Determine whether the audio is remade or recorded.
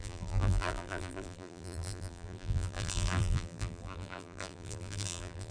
remade